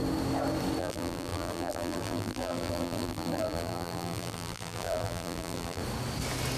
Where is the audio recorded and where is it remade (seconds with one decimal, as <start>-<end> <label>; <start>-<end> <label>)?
0.0-0.8 recorded; 0.8-5.8 remade; 5.8-6.6 recorded